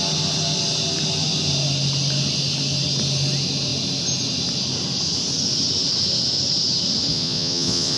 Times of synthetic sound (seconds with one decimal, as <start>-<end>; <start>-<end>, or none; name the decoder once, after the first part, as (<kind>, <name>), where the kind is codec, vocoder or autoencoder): 7.1-8.0 (vocoder, Vocos)